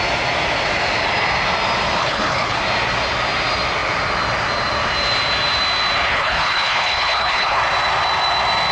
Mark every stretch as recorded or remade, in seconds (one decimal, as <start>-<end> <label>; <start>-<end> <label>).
0.0-2.0 recorded; 2.0-2.6 remade; 2.6-6.1 recorded; 6.1-7.6 remade; 7.6-8.7 recorded